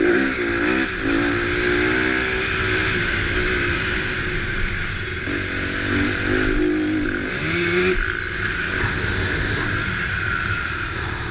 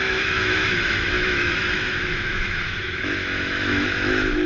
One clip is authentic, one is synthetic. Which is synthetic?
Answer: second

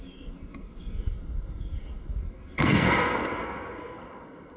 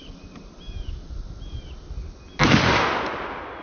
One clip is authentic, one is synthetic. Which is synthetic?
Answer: first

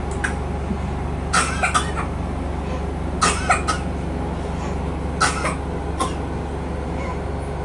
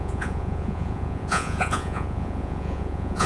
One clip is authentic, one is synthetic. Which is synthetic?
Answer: second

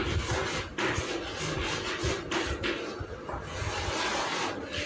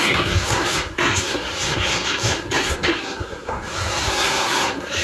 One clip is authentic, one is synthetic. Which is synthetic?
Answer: second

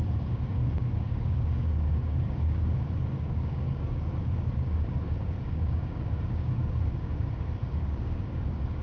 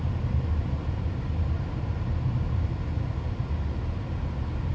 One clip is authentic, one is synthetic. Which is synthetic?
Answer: first